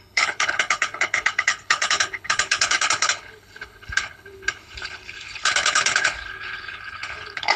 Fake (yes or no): yes